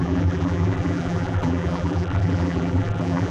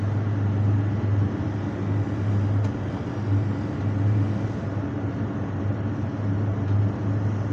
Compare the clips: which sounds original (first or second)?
second